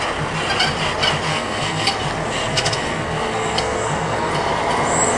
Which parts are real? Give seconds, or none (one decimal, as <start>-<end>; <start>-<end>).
0.0-1.3; 1.9-2.5; 4.3-5.2